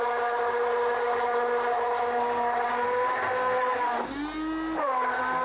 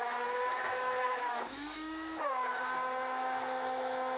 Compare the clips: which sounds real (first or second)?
first